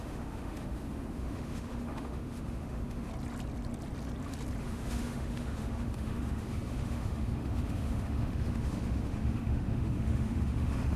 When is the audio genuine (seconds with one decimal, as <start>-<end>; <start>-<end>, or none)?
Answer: 3.1-4.6